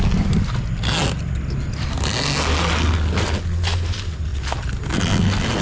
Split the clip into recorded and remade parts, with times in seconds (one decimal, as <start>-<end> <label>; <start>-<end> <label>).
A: 0.0-5.6 recorded